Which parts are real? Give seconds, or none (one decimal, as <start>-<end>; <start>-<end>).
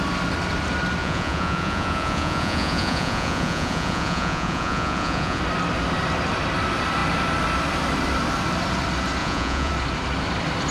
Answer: 0.0-1.0; 5.4-9.2; 9.7-10.7